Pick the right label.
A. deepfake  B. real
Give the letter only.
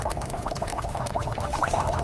A